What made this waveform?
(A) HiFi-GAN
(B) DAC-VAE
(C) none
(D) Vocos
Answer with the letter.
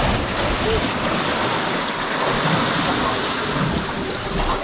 C